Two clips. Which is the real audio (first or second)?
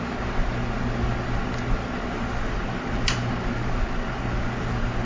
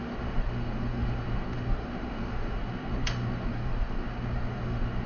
first